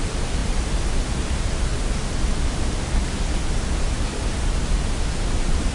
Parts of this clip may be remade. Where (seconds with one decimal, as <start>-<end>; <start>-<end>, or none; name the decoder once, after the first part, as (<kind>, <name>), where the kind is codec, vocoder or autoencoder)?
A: 0.0-0.4 (vocoder, BigVGAN v2); 1.0-1.7; 5.1-5.7

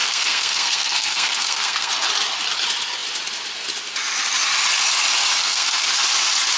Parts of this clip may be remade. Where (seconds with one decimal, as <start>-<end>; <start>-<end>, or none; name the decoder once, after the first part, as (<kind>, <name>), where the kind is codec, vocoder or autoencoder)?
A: 0.0-1.9 (codec, SNAC); 5.4-5.9

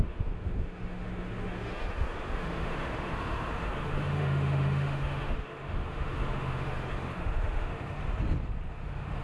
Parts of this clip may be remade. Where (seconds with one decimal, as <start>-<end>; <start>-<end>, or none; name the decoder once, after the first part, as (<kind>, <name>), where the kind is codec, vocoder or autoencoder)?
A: 0.0-8.0 (autoencoder, DAC-VAE); 8.7-9.2

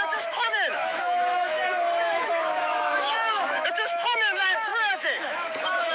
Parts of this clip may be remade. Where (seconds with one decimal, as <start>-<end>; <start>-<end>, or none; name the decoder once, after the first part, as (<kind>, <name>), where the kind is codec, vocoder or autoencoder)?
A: 0.0-5.9 (autoencoder, DAC-VAE)

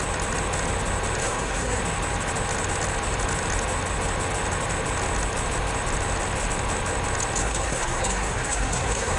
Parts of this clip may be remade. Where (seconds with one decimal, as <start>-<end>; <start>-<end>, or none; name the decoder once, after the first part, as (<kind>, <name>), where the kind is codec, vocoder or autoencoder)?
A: 1.2-1.8 (codec, SNAC); 7.4-9.2